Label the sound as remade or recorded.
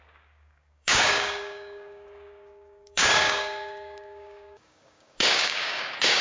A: remade